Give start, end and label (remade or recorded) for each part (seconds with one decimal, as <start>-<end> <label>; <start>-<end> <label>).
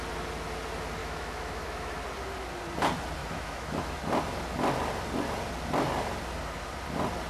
0.0-1.0 recorded; 1.0-2.0 remade; 2.0-3.2 recorded; 3.2-4.0 remade; 4.0-7.3 recorded